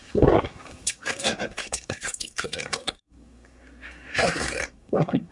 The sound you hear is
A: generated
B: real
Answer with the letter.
A